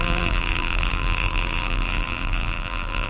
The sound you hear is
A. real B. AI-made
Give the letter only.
B